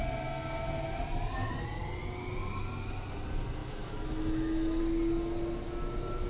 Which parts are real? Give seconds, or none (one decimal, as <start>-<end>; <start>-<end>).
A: 0.0-3.6; 4.8-6.3